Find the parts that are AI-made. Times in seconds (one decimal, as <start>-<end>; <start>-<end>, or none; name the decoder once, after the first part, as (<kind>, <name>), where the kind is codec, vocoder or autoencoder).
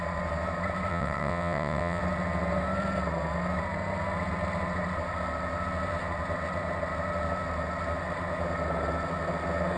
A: 0.9-2.0 (vocoder, WaveNeXt)